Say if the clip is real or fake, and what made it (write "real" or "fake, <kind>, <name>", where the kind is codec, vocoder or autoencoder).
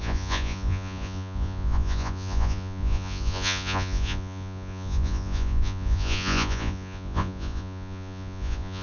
fake, vocoder, Vocos